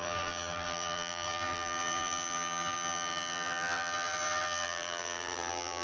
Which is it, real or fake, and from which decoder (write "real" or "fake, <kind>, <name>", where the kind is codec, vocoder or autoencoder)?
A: fake, vocoder, BigVGAN v2